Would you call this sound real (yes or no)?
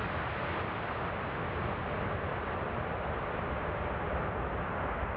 yes